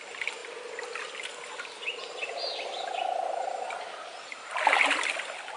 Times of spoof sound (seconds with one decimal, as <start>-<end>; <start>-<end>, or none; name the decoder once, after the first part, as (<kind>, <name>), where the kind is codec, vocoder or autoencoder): none